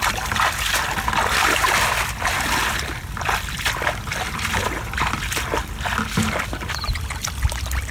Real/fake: real